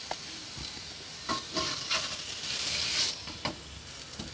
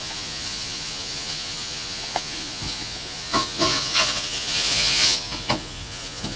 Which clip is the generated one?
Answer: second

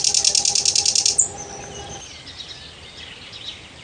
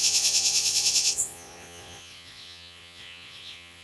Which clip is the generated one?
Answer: second